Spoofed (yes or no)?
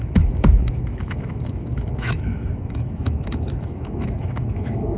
yes